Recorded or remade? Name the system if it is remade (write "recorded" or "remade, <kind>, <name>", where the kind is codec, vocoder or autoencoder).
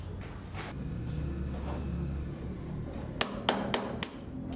recorded